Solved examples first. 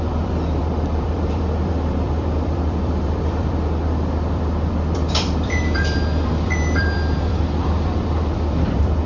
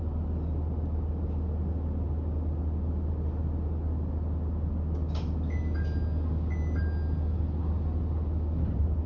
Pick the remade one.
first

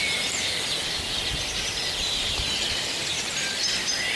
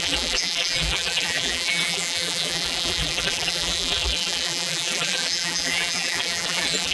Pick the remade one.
second